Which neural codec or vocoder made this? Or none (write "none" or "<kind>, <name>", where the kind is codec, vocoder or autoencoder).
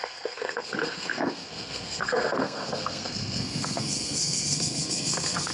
codec, SNAC